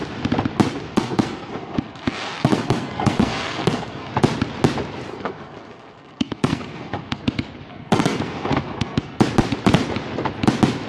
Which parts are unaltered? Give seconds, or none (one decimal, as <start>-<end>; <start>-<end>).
0.0-0.9; 4.1-5.1; 7.2-7.7; 9.2-10.9